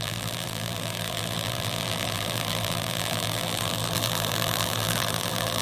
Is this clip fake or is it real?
fake